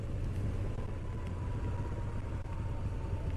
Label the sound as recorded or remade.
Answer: recorded